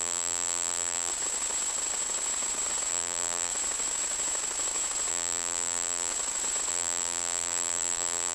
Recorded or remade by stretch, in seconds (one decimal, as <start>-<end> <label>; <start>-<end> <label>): 0.0-1.1 remade; 1.1-2.9 recorded; 2.9-3.5 remade; 3.5-5.1 recorded; 5.1-6.1 remade; 6.1-6.7 recorded; 6.7-8.3 remade